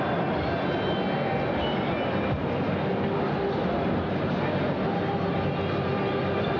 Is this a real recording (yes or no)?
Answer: yes